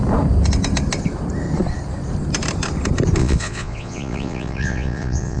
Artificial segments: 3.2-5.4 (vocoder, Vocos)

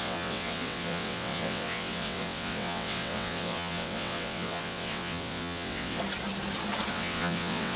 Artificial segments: 0.0-6.0 (vocoder, WaveNeXt); 6.9-7.8

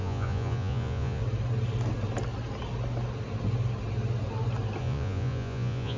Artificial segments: 0.0-1.2 (vocoder, Vocos); 4.8-6.0

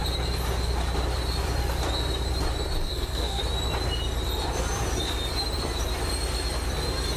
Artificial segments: 2.8-3.4 (codec, SNAC)